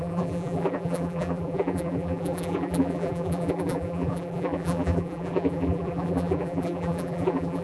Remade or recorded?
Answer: remade